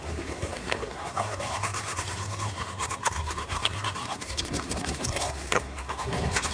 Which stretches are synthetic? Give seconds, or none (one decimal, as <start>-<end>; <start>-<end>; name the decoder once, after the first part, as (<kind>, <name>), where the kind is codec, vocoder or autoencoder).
0.0-6.5 (codec, SNAC)